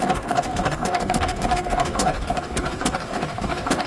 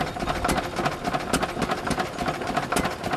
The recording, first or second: second